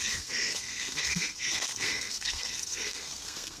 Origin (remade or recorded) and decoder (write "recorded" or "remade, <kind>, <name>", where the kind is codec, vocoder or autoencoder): remade, codec, SNAC